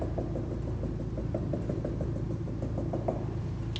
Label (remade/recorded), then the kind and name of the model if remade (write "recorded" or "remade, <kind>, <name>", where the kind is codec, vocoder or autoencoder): recorded